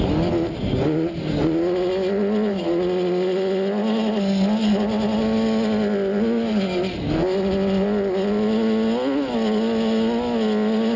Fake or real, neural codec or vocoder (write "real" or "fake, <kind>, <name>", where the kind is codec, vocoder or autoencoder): real